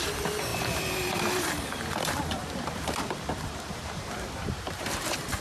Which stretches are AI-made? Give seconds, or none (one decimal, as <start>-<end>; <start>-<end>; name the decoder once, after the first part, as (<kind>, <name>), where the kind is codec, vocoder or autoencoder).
0.0-5.4 (vocoder, BigVGAN v2)